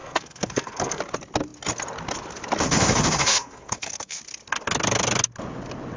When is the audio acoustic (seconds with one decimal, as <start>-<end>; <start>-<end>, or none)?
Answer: 1.0-3.2; 4.2-6.0